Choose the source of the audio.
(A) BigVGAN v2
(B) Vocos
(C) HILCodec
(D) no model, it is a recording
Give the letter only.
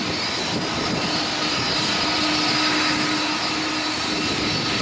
D